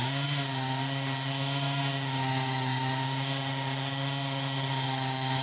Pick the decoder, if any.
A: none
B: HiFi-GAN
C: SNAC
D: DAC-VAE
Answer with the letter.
D